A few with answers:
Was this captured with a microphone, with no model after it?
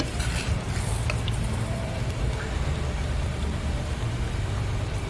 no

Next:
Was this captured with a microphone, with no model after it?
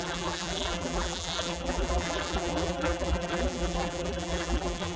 no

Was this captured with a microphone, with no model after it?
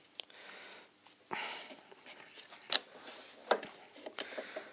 yes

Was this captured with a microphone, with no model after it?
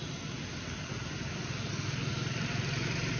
yes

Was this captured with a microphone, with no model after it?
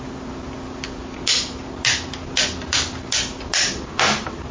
yes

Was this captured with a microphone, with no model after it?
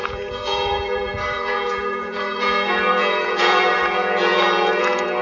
no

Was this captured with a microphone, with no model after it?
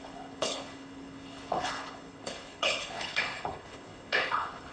no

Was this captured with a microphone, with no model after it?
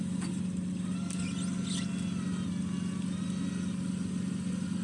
yes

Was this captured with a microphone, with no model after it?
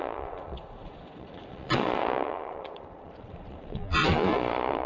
no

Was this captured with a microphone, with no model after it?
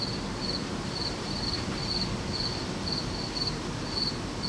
yes